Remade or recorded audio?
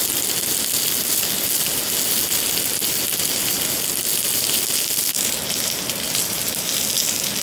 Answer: recorded